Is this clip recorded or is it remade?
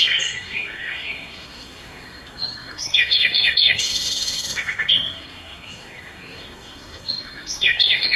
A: remade